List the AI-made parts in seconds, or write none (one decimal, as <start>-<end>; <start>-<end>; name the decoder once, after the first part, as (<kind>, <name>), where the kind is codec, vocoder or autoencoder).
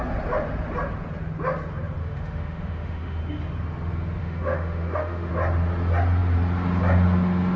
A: 2.0-3.2 (autoencoder, DAC-VAE); 4.2-5.3